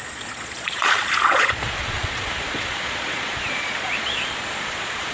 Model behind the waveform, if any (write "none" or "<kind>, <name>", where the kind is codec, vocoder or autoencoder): vocoder, Vocos